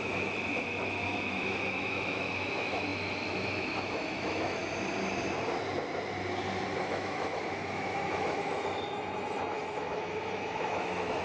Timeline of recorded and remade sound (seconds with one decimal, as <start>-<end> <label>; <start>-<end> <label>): 0.0-4.6 remade; 4.6-6.8 recorded; 6.8-11.2 remade